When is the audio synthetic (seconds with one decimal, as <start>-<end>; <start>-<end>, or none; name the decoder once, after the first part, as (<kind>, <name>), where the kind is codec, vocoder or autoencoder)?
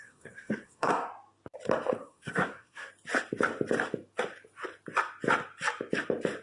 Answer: 0.0-1.1 (codec, SNAC); 2.0-2.9